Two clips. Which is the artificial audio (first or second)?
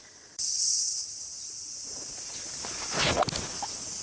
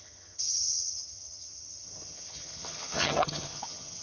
second